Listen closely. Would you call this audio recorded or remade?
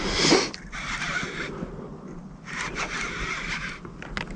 recorded